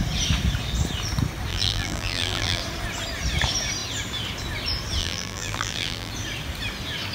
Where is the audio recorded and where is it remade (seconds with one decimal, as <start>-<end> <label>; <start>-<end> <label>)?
0.0-1.5 recorded; 1.5-2.6 remade; 2.6-5.0 recorded; 5.0-6.1 remade; 6.1-7.1 recorded